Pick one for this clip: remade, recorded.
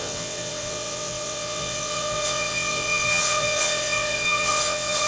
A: remade